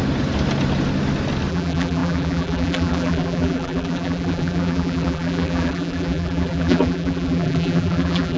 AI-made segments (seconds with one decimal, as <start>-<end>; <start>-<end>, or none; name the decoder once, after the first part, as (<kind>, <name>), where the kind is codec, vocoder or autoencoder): 1.5-8.4 (vocoder, BigVGAN v2)